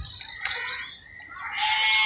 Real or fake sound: real